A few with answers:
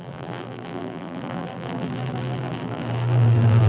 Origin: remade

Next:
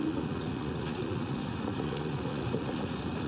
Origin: remade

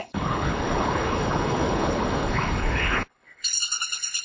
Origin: remade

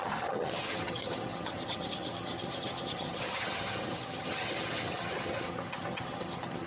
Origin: remade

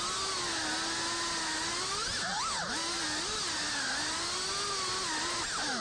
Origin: recorded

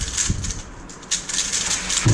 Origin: recorded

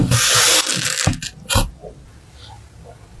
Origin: recorded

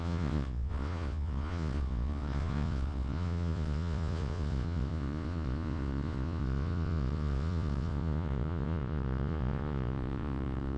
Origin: remade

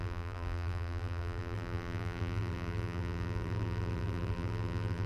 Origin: remade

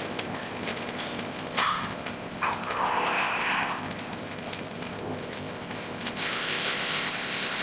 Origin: remade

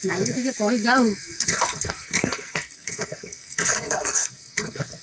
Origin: remade